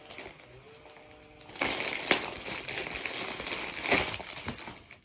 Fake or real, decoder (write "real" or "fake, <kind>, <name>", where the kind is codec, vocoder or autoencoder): real